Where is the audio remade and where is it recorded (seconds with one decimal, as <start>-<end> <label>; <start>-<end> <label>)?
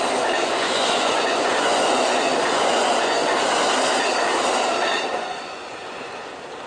0.0-0.4 recorded; 0.4-3.4 remade; 3.4-5.1 recorded; 5.1-6.3 remade; 6.3-6.7 recorded